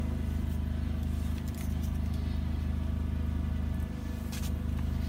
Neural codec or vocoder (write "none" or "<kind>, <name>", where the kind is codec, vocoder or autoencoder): none